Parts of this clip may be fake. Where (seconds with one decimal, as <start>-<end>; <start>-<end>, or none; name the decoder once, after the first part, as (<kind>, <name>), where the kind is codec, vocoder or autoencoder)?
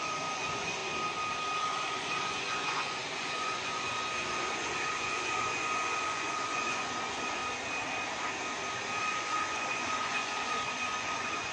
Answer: 0.0-0.8 (vocoder, Vocos); 1.6-7.4; 9.0-11.5